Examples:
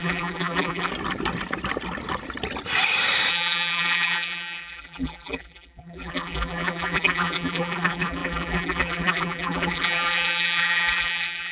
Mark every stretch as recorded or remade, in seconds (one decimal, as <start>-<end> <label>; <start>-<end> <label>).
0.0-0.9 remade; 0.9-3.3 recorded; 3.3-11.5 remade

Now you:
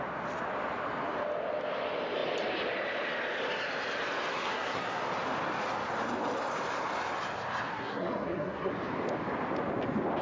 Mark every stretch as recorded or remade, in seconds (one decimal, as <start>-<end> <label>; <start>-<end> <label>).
0.0-4.3 recorded; 4.3-5.0 remade; 5.0-7.7 recorded; 7.7-8.7 remade; 8.7-10.2 recorded

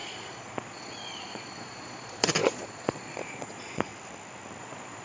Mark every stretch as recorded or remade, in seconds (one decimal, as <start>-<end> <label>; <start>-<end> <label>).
0.0-3.9 remade; 3.9-4.6 recorded; 4.6-5.0 remade

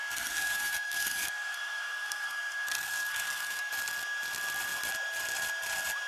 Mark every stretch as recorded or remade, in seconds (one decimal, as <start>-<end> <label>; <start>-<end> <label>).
0.0-3.7 remade; 3.7-6.1 recorded

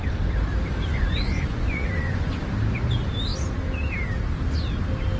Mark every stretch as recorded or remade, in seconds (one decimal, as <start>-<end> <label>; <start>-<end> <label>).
0.0-0.9 recorded; 0.9-2.4 remade; 2.4-5.2 recorded

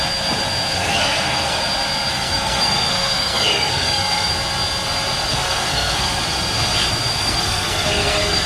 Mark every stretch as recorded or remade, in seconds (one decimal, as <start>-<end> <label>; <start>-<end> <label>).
0.0-0.7 recorded; 0.7-1.6 remade; 1.6-2.1 recorded; 2.1-4.3 remade; 4.3-5.3 recorded; 5.3-6.2 remade; 6.2-7.2 recorded; 7.2-8.5 remade

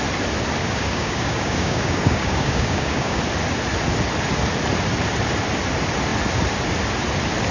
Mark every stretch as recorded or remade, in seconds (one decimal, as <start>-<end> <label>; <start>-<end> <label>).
0.0-0.6 recorded; 0.6-3.2 remade; 3.2-7.5 recorded

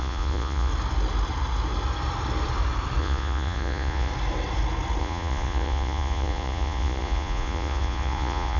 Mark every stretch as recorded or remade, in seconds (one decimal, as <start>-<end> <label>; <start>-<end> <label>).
0.0-0.7 remade; 0.7-3.0 recorded; 3.0-4.1 remade; 4.1-5.0 recorded; 5.0-8.6 remade